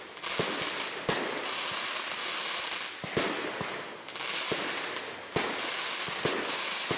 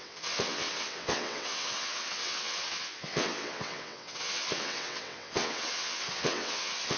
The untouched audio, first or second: first